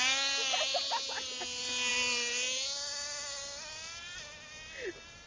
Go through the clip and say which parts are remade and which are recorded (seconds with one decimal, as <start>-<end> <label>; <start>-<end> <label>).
0.0-5.3 recorded